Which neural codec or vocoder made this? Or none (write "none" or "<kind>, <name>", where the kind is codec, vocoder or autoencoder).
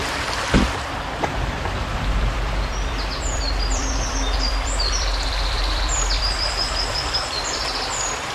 vocoder, BigVGAN v2